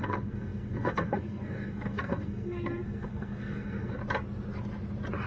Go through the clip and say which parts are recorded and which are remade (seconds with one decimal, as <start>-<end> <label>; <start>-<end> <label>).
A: 0.0-4.0 remade; 4.0-5.3 recorded